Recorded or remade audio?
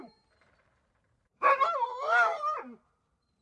remade